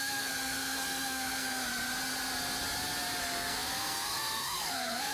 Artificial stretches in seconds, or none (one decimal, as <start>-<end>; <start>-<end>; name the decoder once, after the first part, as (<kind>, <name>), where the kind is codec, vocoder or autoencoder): 0.0-1.7 (codec, SNAC); 3.2-5.1